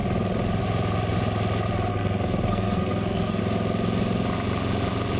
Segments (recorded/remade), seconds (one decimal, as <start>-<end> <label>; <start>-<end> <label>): 0.0-1.9 recorded; 1.9-3.4 remade; 3.4-5.2 recorded